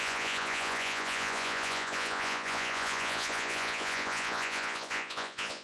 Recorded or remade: remade